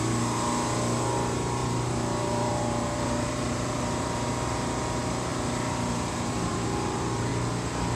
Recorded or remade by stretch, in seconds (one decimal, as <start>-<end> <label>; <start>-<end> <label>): 0.0-7.3 remade; 7.3-8.0 recorded

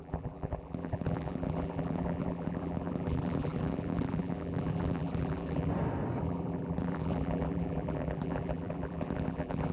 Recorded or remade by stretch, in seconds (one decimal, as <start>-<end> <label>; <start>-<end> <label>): 0.0-5.7 remade; 5.7-6.2 recorded; 6.2-9.7 remade

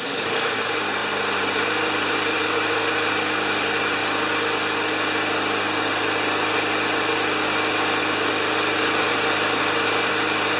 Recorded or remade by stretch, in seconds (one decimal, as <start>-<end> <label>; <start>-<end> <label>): 0.0-4.0 remade; 4.0-9.0 recorded; 9.0-10.6 remade

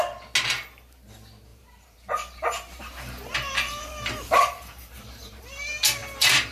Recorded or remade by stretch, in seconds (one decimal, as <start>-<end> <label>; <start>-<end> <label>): 0.0-1.5 recorded; 1.5-5.4 remade; 5.4-6.0 recorded; 6.0-6.5 remade

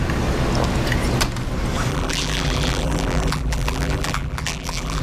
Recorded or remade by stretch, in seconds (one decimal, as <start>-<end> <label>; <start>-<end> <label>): 0.0-1.9 recorded; 1.9-5.0 remade

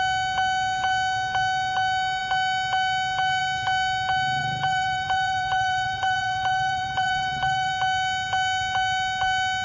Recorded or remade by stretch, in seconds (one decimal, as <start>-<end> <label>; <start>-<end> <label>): 0.0-4.4 recorded; 4.4-7.7 remade; 7.7-9.6 recorded

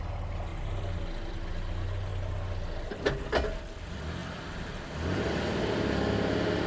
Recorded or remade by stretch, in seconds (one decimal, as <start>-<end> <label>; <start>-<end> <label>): 0.0-0.5 recorded; 0.5-1.3 remade; 1.3-6.7 recorded

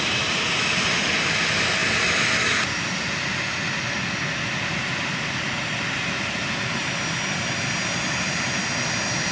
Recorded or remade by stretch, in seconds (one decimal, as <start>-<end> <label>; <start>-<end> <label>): 0.0-9.3 recorded